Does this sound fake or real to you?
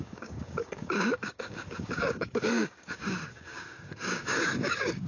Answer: fake